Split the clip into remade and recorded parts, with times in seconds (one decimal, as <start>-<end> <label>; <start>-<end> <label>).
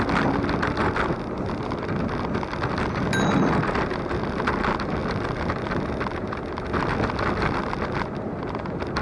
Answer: 0.0-9.0 recorded